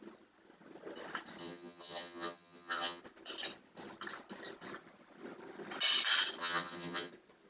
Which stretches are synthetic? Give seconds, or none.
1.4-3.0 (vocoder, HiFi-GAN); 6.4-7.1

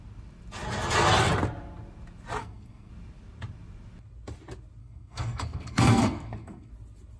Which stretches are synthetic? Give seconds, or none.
2.4-2.9 (codec, SNAC); 4.8-6.7

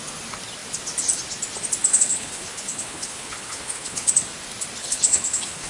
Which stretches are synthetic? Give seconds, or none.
1.9-4.1 (codec, HILCodec); 4.8-5.7

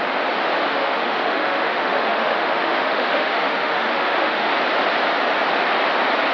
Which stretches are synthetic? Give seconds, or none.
0.7-4.5 (autoencoder, DAC-VAE)